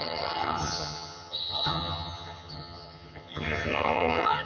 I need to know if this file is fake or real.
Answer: fake